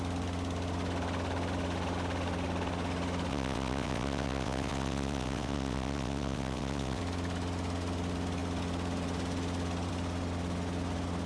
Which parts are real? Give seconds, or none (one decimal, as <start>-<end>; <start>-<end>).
0.0-3.3; 7.0-11.3